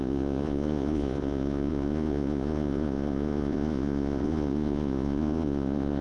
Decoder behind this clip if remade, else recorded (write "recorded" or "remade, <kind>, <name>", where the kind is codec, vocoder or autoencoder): remade, vocoder, Vocos